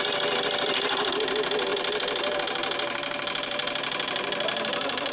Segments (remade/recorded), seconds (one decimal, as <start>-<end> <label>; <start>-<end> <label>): 0.0-1.7 recorded; 1.7-5.1 remade